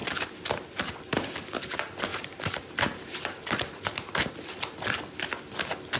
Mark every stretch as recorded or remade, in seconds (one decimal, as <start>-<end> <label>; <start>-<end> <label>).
0.0-2.1 recorded; 2.1-4.3 remade; 4.3-6.0 recorded